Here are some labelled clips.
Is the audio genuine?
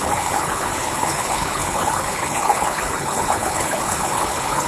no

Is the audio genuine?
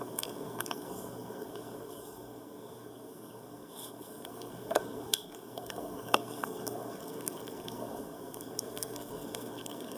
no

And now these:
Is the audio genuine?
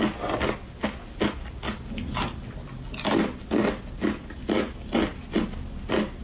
yes